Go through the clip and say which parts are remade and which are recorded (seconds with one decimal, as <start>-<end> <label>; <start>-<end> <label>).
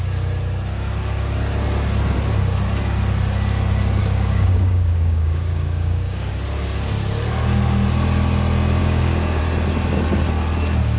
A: 0.0-4.0 recorded; 4.0-6.3 remade; 6.3-8.8 recorded; 8.8-9.4 remade; 9.4-11.0 recorded